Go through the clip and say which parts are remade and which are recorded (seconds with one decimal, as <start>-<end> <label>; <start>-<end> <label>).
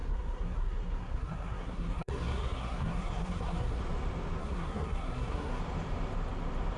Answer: 0.0-3.8 remade; 3.8-4.4 recorded; 4.4-5.6 remade; 5.6-6.8 recorded